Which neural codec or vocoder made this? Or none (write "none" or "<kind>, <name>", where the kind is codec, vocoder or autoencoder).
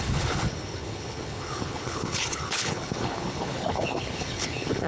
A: codec, HILCodec